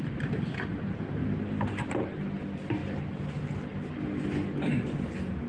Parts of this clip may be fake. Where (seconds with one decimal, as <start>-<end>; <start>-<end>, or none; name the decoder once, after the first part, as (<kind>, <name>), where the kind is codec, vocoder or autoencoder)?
none